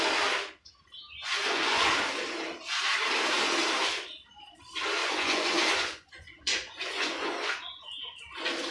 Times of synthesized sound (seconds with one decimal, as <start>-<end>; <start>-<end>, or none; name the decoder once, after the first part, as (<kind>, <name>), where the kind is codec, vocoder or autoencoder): 1.2-1.9 (vocoder, Vocos); 5.0-7.5

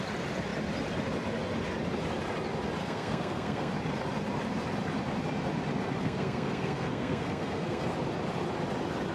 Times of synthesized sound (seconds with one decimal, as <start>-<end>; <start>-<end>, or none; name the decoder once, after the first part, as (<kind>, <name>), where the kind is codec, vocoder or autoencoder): 2.8-3.7 (codec, SNAC); 6.0-7.9

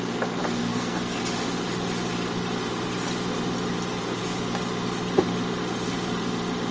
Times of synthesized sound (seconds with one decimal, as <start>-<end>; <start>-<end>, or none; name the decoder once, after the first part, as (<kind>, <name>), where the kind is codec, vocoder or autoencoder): 0.6-1.2 (codec, SNAC)

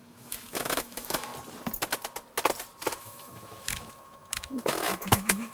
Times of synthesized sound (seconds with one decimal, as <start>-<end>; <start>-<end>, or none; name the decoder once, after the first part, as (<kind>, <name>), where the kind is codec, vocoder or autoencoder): 0.0-1.3 (autoencoder, DAC-VAE); 3.0-5.5

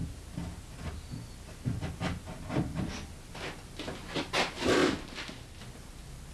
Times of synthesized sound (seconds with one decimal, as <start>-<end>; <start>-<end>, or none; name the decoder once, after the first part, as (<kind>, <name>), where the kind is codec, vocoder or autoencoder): none

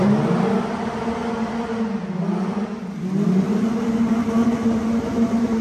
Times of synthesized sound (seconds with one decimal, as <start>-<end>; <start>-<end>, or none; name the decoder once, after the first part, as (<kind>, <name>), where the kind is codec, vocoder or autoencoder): none